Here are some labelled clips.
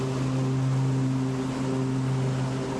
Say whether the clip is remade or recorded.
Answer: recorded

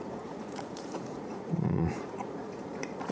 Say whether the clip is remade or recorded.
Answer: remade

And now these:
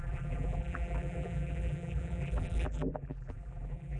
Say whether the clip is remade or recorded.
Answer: remade